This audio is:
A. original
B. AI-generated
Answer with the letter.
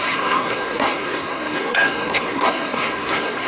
B